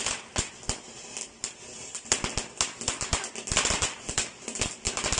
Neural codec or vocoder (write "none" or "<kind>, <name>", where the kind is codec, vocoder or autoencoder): vocoder, BigVGAN v2